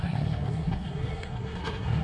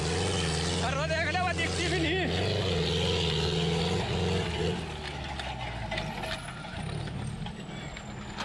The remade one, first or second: first